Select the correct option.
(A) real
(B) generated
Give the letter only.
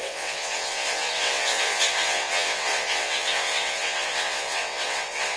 B